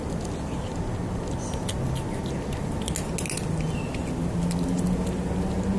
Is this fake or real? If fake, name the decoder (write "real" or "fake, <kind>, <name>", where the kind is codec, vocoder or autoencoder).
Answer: real